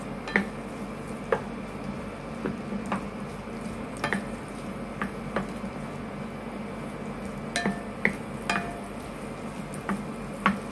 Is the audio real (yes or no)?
yes